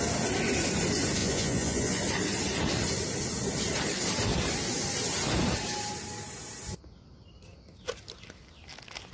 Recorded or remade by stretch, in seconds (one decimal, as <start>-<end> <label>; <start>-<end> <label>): 0.0-1.2 recorded; 1.2-2.0 remade; 2.0-9.1 recorded